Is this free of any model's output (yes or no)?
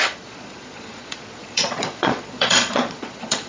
no